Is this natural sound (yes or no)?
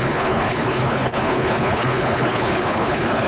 no